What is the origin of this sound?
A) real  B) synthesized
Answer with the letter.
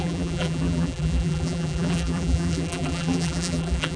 B